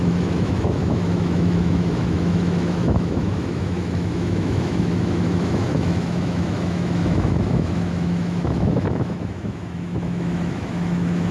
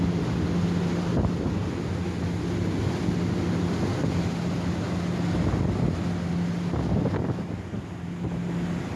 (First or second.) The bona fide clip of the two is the second